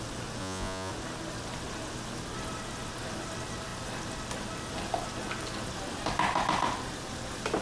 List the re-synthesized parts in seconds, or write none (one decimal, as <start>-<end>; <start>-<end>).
0.4-0.9